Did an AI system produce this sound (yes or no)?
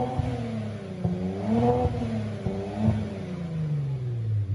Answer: no